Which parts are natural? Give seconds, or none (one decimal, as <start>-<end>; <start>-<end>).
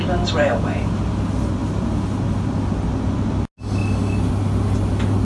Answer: 0.0-5.2